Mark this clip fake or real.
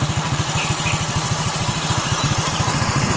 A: real